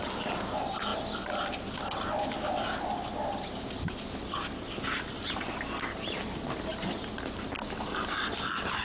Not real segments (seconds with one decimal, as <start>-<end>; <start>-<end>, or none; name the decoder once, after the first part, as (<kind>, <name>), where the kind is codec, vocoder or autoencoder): none